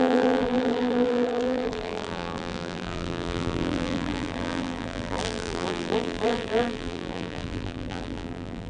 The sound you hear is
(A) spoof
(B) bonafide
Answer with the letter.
A